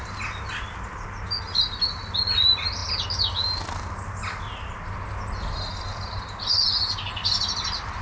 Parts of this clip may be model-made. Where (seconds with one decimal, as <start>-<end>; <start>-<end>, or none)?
none